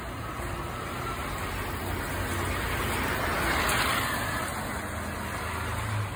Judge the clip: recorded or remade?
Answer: recorded